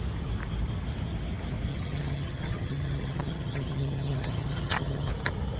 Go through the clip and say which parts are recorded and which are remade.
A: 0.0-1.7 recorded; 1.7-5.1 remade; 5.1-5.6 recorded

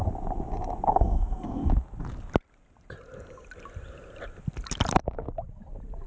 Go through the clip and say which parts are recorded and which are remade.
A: 0.0-0.9 recorded; 0.9-1.7 remade; 1.7-6.1 recorded

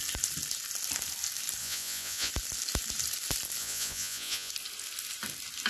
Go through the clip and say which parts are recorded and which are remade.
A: 0.0-1.6 recorded; 1.6-2.3 remade; 2.3-3.6 recorded; 3.6-4.5 remade; 4.5-5.7 recorded

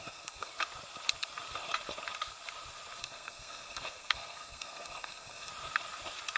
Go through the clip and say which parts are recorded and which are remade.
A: 0.0-0.5 remade; 0.5-3.0 recorded; 3.0-5.5 remade; 5.5-6.4 recorded

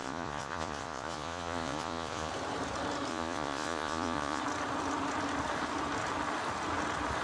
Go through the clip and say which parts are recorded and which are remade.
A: 0.0-2.3 remade; 2.3-3.1 recorded; 3.1-4.4 remade; 4.4-7.2 recorded